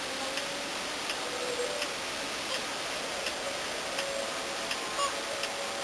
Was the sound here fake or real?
real